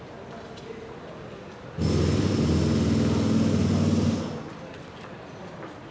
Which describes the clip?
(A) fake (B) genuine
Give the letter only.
B